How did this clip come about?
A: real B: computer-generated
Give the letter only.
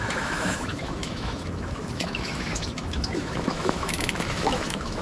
B